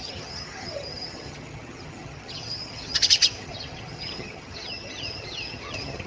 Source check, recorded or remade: remade